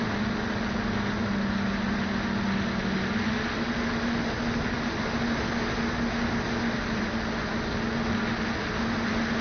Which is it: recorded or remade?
recorded